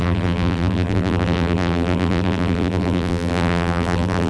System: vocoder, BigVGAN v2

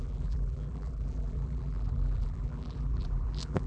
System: vocoder, BigVGAN v2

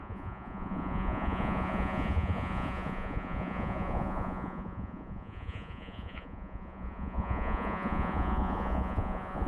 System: vocoder, Vocos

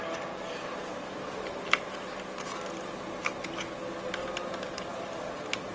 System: none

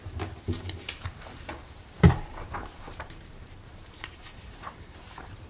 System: vocoder, BigVGAN v2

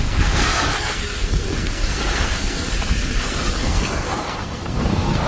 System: codec, SNAC